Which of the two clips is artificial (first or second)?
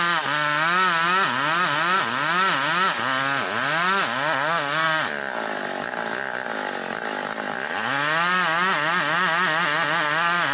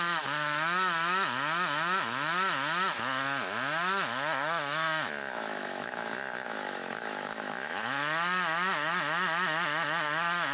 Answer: second